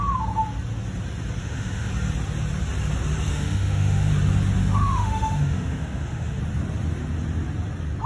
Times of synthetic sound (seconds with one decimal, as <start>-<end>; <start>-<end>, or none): 1.4-1.9; 3.3-4.1; 4.6-6.4